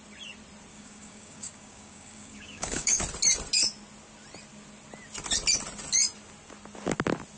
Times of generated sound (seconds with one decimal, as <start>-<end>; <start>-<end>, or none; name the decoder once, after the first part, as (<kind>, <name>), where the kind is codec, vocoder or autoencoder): 0.7-3.0 (codec, DAC)